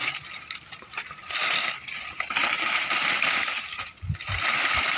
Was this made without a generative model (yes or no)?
yes